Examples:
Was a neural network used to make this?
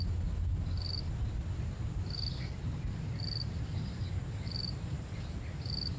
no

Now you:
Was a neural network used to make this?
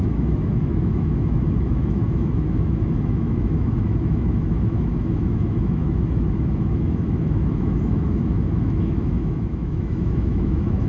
yes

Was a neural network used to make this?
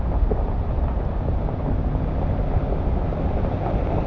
no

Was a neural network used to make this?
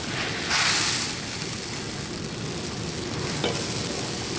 no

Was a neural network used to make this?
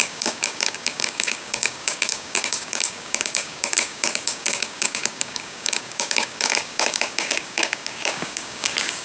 yes